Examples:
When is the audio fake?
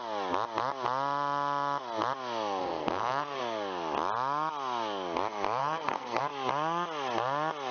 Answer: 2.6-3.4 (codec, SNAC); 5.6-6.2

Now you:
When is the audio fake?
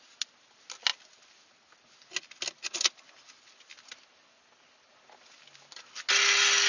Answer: none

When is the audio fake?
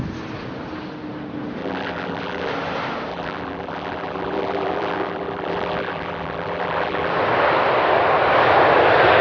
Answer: 1.6-2.5 (vocoder, BigVGAN v2); 3.1-7.1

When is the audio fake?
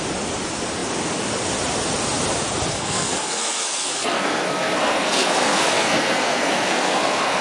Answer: 2.7-7.4 (codec, SNAC)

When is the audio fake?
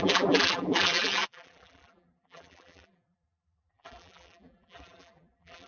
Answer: 0.0-5.7 (vocoder, BigVGAN v2)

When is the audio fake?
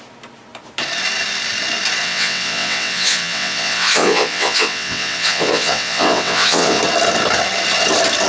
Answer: 2.0-6.8 (vocoder, WaveNeXt)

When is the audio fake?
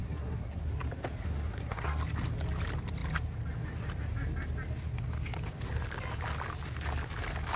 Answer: 0.0-0.6 (codec, SNAC); 1.2-2.0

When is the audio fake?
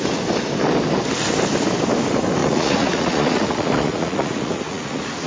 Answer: 2.4-5.3 (vocoder, Vocos)